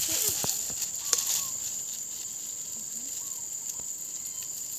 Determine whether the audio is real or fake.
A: real